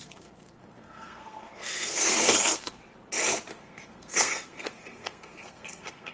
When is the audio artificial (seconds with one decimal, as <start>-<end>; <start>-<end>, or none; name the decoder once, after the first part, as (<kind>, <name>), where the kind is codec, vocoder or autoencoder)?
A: 0.0-2.8 (codec, SNAC); 3.6-6.1